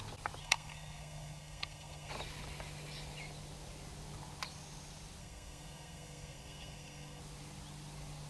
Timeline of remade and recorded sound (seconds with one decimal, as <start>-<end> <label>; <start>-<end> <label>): 0.0-0.4 recorded; 0.4-2.1 remade; 2.1-5.2 recorded; 5.2-7.2 remade; 7.2-8.3 recorded